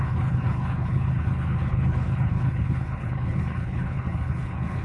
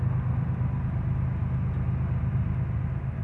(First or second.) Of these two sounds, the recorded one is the second